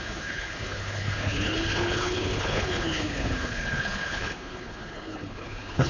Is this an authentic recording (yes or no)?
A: no